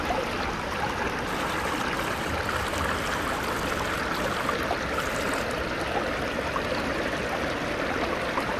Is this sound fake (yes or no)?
no